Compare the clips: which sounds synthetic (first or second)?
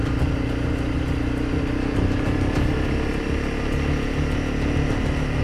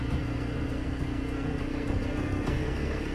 second